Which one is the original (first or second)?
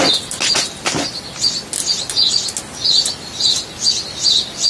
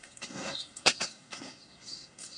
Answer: first